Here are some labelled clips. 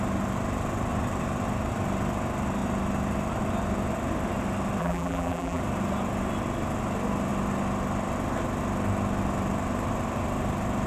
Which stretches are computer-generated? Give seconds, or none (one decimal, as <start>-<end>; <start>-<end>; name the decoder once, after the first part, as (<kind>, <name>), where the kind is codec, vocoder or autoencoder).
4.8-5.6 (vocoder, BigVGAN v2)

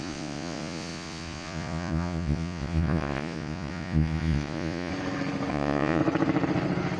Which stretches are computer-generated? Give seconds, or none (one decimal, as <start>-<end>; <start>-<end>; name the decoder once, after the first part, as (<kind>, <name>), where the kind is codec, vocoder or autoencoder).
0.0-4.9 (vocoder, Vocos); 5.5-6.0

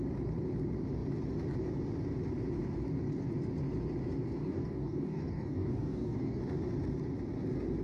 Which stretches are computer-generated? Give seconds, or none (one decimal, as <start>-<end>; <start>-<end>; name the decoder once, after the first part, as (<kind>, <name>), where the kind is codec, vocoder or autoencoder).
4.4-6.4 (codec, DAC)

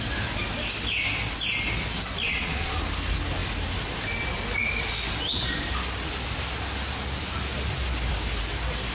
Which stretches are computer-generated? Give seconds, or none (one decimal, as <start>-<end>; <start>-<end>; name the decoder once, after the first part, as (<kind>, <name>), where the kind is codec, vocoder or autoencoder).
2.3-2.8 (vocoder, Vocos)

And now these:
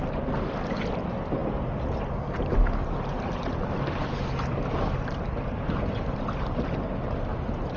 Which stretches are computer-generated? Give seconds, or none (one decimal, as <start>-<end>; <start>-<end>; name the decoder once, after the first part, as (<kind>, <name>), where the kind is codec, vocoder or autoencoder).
none